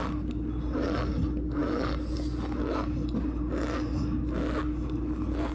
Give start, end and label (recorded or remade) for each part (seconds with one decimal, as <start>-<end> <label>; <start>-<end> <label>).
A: 0.0-5.5 recorded